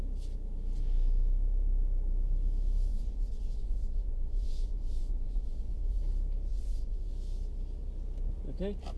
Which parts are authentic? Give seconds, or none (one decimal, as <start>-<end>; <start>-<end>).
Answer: 0.0-2.9; 6.0-6.5; 7.1-9.0